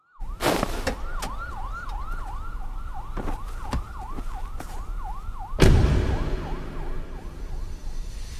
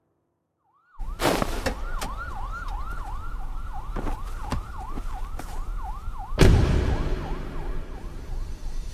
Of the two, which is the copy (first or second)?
second